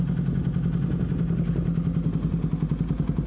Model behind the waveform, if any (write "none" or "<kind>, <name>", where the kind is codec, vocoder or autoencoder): none